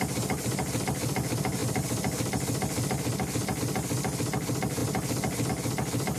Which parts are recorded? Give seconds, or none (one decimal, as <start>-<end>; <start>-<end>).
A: 0.0-6.2